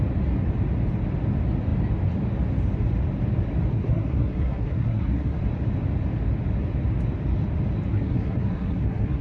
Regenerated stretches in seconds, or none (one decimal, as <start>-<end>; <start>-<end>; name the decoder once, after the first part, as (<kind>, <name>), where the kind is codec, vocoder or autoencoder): 3.7-5.4 (codec, SNAC); 7.9-9.2